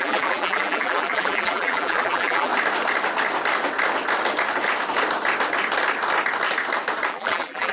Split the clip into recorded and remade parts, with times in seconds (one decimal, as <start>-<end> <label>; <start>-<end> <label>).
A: 0.0-2.5 remade; 2.5-7.1 recorded; 7.1-7.7 remade